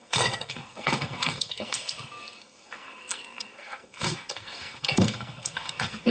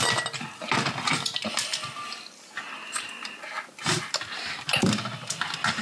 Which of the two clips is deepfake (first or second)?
first